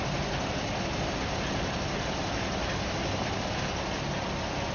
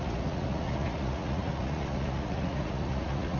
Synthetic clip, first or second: second